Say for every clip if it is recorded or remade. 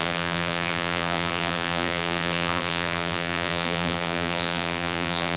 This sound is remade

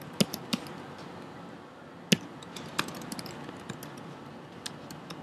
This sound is recorded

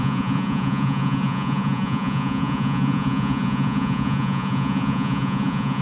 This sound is remade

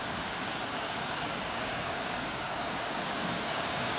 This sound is remade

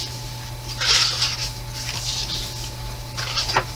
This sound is recorded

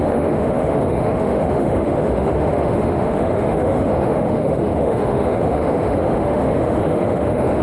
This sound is remade